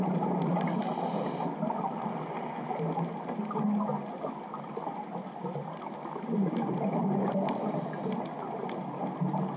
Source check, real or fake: real